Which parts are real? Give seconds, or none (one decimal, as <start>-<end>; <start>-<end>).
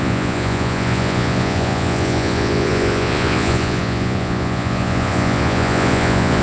none